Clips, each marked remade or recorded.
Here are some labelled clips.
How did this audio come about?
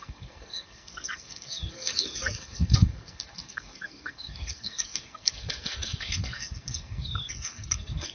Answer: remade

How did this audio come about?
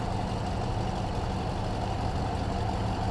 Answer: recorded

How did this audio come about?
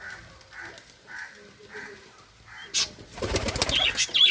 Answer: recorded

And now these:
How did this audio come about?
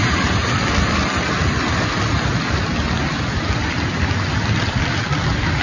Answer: recorded